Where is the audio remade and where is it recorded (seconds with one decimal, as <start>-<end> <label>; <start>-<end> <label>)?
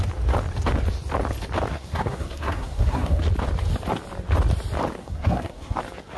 0.0-1.7 recorded; 1.7-3.2 remade; 3.2-5.0 recorded; 5.0-5.8 remade; 5.8-6.2 recorded